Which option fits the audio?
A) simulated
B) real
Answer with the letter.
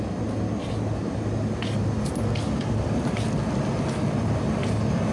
B